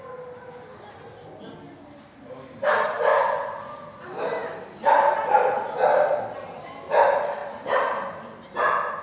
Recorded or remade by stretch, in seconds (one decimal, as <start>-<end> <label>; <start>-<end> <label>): 0.0-9.0 recorded